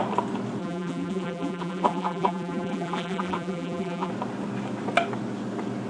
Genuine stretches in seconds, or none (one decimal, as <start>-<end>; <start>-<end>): 0.0-0.6; 4.1-5.9